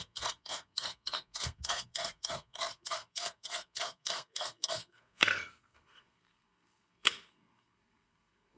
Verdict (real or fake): fake